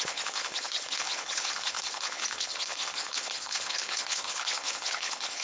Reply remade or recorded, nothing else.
remade